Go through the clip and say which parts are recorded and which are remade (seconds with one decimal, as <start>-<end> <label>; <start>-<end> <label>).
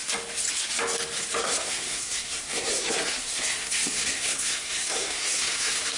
0.0-1.4 recorded; 1.4-6.0 remade